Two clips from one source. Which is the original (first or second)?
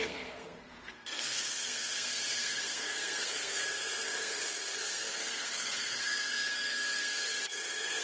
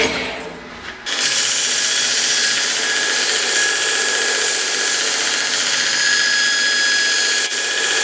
second